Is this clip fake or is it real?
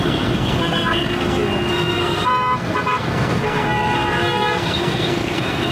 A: fake